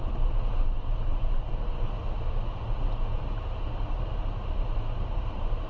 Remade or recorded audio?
recorded